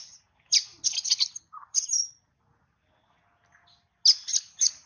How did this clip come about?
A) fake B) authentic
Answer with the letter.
B